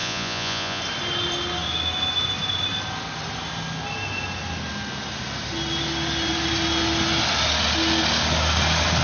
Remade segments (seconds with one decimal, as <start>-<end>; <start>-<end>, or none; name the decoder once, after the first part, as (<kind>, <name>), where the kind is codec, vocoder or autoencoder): 0.0-0.8 (vocoder, Vocos)